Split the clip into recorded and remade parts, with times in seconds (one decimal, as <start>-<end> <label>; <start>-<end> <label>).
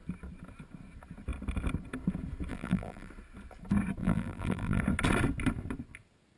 0.0-2.5 recorded; 2.5-3.1 remade; 3.1-4.0 recorded; 4.0-4.8 remade; 4.8-6.4 recorded